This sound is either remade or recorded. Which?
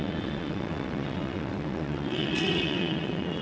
remade